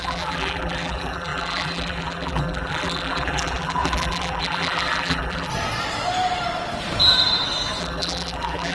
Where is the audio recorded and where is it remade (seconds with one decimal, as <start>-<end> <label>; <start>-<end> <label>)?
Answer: 0.0-5.5 remade; 5.5-7.8 recorded; 7.8-8.7 remade